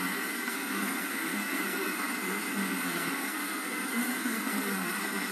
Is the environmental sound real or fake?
fake